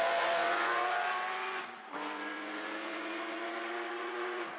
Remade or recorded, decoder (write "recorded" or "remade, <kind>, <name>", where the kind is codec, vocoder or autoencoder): remade, vocoder, Vocos